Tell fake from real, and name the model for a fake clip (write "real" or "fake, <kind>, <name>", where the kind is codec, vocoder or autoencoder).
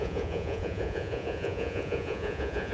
fake, vocoder, Vocos